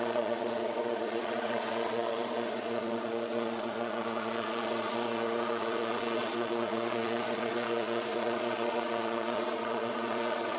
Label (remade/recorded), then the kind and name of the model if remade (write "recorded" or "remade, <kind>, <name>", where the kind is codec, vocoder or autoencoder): remade, vocoder, Vocos